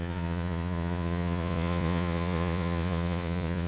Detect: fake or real fake